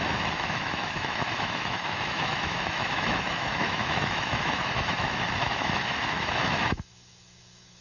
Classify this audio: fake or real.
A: fake